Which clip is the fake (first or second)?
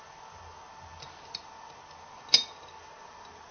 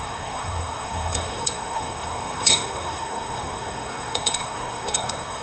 second